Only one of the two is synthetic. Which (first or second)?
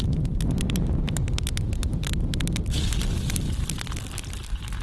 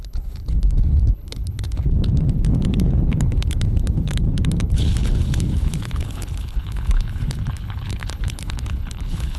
second